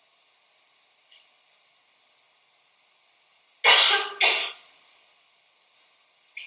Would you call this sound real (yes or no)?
yes